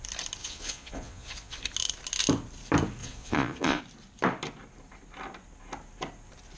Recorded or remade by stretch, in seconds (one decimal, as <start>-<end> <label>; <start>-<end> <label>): 0.0-0.4 recorded; 0.4-1.6 remade; 1.6-3.0 recorded; 3.0-3.8 remade; 3.8-6.6 recorded